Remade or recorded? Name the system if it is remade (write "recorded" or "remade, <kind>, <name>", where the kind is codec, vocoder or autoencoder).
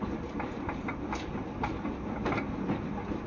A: recorded